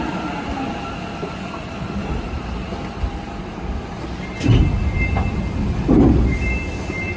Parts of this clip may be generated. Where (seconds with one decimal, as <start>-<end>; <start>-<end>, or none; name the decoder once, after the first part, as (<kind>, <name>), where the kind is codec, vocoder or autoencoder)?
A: none